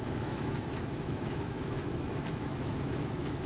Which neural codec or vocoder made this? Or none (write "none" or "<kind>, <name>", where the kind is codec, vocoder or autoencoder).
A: autoencoder, DAC-VAE